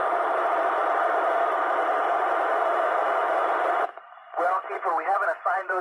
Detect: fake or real fake